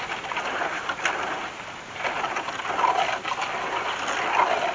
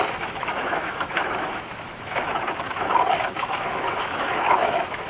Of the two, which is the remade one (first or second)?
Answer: second